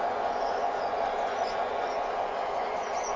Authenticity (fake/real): fake